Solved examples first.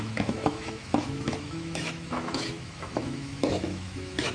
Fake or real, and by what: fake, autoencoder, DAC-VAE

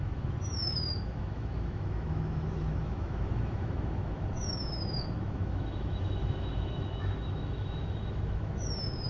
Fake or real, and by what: fake, autoencoder, DAC-VAE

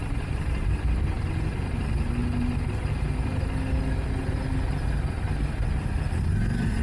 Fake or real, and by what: real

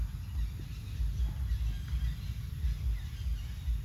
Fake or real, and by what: real